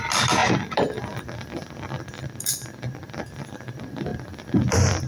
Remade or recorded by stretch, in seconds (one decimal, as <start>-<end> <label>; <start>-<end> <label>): 0.0-5.1 remade